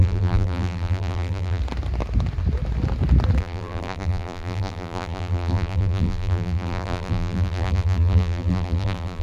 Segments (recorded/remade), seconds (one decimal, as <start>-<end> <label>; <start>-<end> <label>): 0.0-1.6 remade; 1.6-3.4 recorded; 3.4-9.2 remade